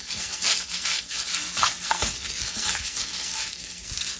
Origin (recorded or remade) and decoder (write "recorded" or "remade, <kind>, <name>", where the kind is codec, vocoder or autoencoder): remade, codec, SNAC